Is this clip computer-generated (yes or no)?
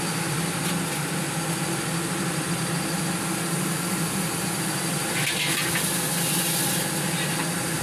no